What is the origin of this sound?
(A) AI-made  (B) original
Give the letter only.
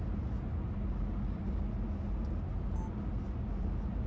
B